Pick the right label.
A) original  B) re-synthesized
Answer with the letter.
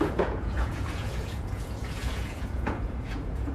B